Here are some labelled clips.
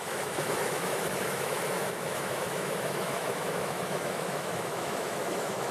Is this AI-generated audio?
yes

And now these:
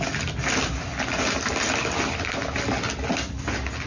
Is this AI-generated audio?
no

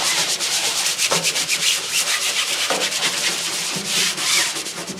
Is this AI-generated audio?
yes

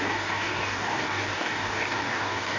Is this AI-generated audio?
yes